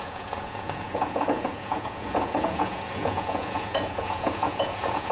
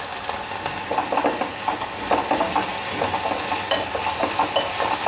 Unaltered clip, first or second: second